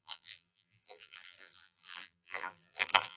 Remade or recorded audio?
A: remade